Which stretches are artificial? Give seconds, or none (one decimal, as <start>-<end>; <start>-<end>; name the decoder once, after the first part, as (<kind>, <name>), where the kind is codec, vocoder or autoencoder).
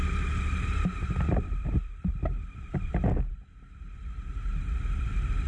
0.0-3.3 (vocoder, BigVGAN v2)